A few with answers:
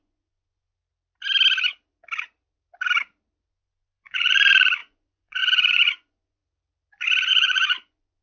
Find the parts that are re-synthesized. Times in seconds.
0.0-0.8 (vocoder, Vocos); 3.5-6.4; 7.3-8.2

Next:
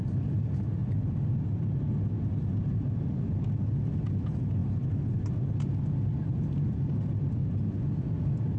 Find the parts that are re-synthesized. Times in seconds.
none

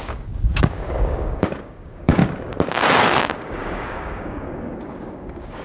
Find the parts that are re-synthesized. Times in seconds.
0.0-2.2 (codec, DAC); 3.2-5.6